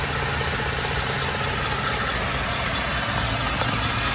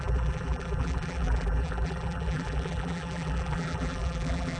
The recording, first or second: first